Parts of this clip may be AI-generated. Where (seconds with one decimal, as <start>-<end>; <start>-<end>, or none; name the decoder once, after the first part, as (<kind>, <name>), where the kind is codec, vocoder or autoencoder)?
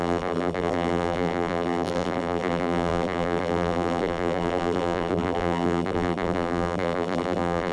0.0-7.7 (vocoder, BigVGAN v2)